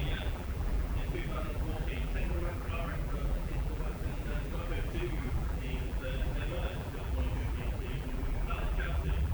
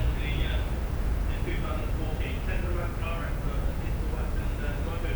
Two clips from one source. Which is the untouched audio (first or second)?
second